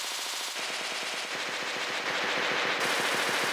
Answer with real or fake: real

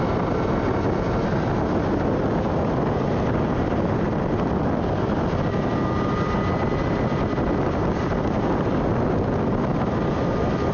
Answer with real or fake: real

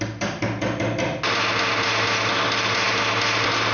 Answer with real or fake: real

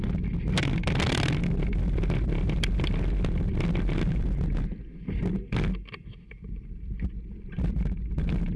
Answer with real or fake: real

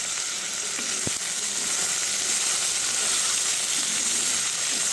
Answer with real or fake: real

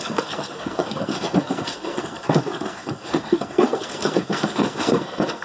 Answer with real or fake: fake